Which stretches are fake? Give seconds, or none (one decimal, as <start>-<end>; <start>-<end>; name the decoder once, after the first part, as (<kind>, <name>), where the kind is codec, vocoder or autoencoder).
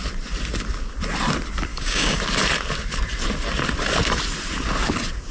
1.7-2.2 (codec, DAC)